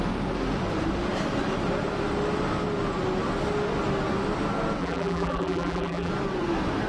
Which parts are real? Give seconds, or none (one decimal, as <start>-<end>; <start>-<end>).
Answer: 0.0-4.8; 6.1-6.9